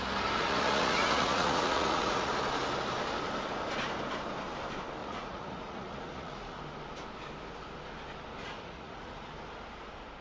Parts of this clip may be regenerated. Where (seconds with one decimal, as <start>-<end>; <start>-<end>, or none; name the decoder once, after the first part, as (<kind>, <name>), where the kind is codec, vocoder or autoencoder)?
0.4-2.3 (vocoder, Vocos); 5.0-6.6; 8.4-9.3